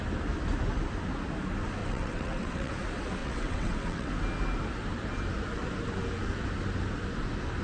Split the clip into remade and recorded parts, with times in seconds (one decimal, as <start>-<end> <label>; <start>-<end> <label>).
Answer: 0.0-1.8 recorded; 1.8-2.7 remade; 2.7-3.2 recorded; 3.2-4.1 remade; 4.1-7.6 recorded